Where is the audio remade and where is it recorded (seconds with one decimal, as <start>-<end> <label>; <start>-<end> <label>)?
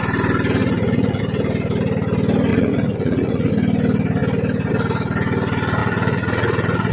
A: 0.0-0.6 recorded; 0.6-1.2 remade; 1.2-2.5 recorded; 2.5-3.5 remade; 3.5-5.8 recorded; 5.8-6.9 remade